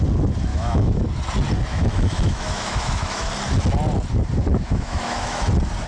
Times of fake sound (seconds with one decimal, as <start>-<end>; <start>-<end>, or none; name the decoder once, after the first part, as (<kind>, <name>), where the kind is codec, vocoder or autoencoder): 0.5-1.0 (autoencoder, DAC-VAE); 1.7-3.3; 4.5-5.5